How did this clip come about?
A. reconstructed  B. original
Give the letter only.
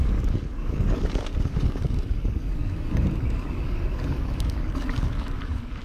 A